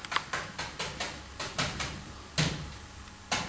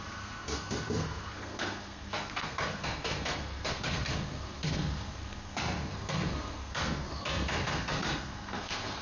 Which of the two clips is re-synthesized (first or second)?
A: second